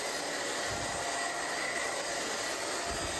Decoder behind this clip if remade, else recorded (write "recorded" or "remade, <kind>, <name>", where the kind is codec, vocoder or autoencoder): recorded